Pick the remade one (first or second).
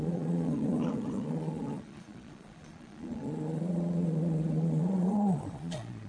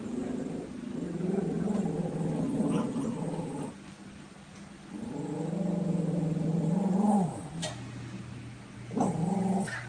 first